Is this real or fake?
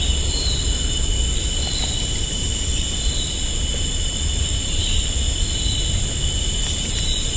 real